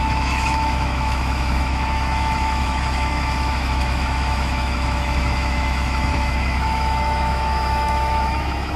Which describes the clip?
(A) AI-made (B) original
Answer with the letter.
A